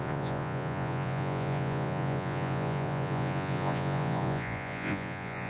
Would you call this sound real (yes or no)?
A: no